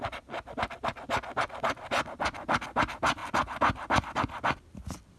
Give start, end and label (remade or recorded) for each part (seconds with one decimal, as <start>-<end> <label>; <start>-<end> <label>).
0.0-5.2 recorded